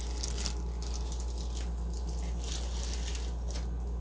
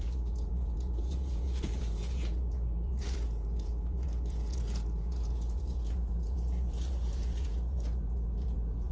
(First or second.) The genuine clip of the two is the first